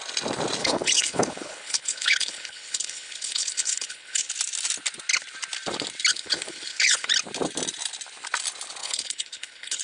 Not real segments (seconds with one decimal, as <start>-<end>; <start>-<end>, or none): 0.6-4.3; 6.1-7.1; 8.8-9.8